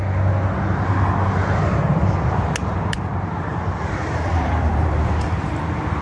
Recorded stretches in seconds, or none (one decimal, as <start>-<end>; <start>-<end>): 0.0-2.6